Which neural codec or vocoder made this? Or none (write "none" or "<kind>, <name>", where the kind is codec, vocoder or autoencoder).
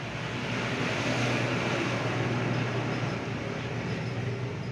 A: none